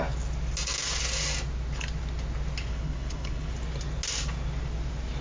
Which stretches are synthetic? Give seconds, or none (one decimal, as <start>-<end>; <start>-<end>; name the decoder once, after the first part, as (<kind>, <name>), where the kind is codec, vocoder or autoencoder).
2.7-3.5 (codec, HILCodec)